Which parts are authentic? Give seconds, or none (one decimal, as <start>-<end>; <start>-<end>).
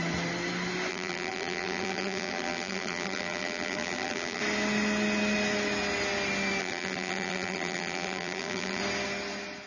0.0-0.9; 4.4-6.6; 8.8-9.7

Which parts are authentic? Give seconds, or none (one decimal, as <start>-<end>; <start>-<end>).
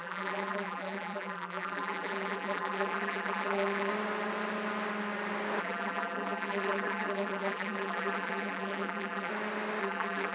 3.9-5.6; 9.3-9.8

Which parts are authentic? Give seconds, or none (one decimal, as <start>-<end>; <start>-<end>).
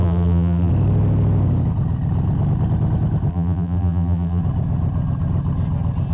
0.7-3.3; 4.4-6.1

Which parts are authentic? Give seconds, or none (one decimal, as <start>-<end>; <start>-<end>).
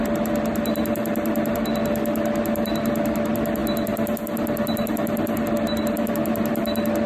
0.0-7.1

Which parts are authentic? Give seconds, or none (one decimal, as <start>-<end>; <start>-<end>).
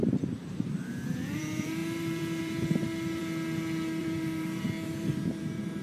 3.2-4.0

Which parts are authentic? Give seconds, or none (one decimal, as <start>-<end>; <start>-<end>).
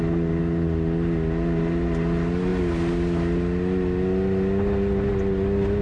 0.0-5.8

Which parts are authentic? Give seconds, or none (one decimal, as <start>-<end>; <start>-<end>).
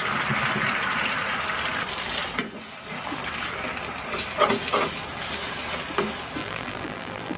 0.0-6.4